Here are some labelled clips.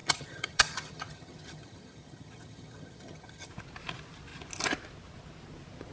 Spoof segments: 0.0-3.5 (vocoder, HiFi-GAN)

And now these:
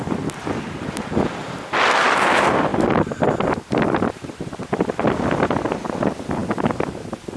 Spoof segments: none

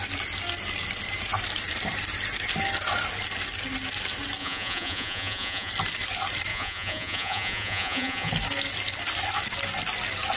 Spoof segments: 4.4-5.7 (vocoder, Vocos); 6.5-8.3

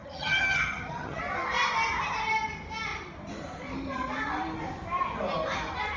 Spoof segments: 0.0-1.2 (vocoder, HiFi-GAN)

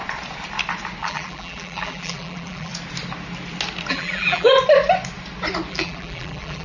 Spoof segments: 1.0-2.7 (vocoder, BigVGAN v2); 3.9-4.5; 5.7-6.6

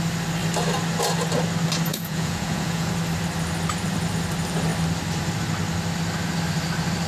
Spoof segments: 1.9-2.9 (vocoder, Vocos)

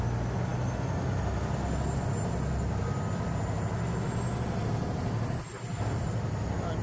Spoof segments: none

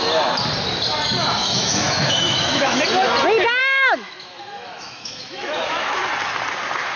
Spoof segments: 1.4-2.8 (autoencoder, DAC-VAE); 3.6-6.0